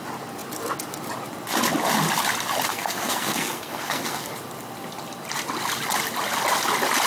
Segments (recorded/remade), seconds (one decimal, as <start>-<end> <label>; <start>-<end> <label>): 0.0-2.7 recorded; 2.7-4.3 remade; 4.3-7.1 recorded